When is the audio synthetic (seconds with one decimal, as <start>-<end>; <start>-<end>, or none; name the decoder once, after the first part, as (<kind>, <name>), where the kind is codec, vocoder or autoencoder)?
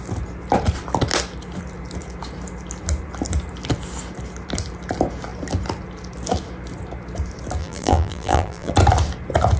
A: 7.6-8.7 (vocoder, BigVGAN v2)